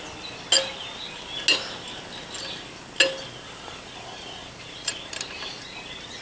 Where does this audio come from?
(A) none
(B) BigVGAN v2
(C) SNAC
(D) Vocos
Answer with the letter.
A